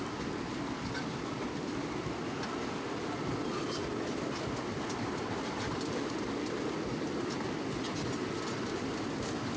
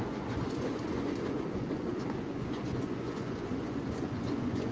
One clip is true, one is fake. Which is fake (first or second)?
second